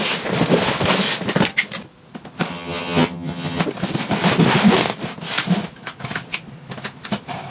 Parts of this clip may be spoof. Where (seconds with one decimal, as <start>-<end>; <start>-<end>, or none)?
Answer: 2.5-3.6